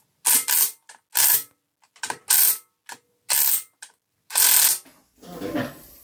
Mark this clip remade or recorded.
recorded